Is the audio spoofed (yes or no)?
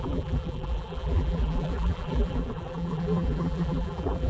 yes